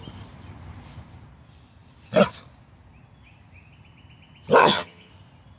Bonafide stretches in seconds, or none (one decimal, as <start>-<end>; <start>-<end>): 0.0-4.6; 5.1-5.6